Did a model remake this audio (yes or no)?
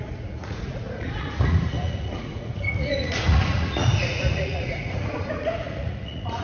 yes